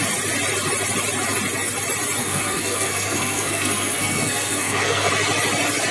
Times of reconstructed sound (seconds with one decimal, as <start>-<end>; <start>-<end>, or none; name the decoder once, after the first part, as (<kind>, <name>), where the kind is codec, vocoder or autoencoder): 2.2-5.1 (codec, SNAC)